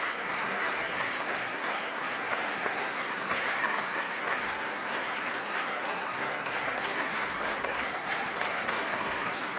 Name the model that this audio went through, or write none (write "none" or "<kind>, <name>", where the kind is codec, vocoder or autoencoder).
codec, SNAC